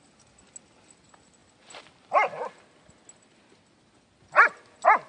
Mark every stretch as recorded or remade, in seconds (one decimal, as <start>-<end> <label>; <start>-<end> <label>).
0.0-5.1 recorded